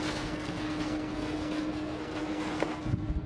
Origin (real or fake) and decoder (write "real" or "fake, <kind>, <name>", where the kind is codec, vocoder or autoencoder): fake, codec, SNAC